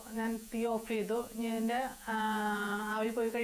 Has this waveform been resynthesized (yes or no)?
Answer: yes